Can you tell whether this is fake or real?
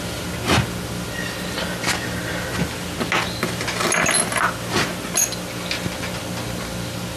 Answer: real